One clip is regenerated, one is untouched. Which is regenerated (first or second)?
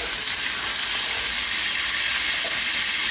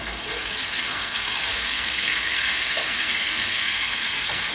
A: second